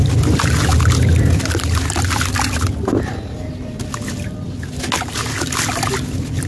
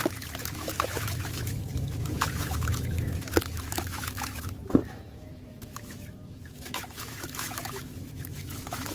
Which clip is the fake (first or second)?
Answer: second